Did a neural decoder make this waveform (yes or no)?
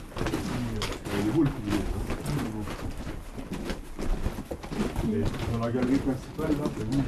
no